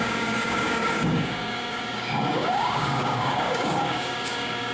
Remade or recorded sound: remade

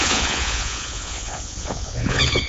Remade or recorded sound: remade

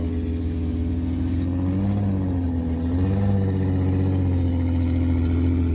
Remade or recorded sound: recorded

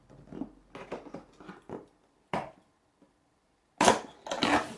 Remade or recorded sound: recorded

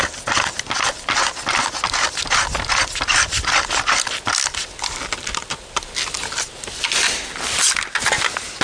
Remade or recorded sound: recorded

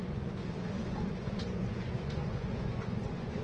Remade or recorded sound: remade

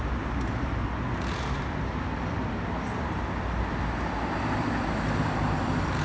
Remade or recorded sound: recorded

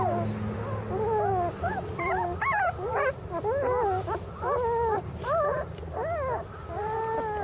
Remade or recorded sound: recorded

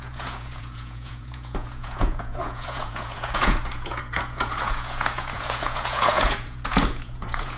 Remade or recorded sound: remade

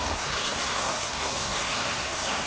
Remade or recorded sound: remade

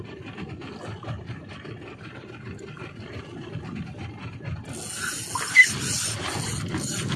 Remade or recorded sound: recorded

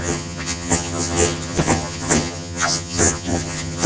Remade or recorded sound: remade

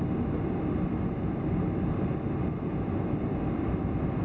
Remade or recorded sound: recorded